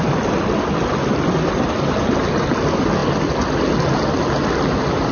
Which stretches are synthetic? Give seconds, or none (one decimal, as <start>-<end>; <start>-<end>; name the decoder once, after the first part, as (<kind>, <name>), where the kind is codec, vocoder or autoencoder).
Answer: none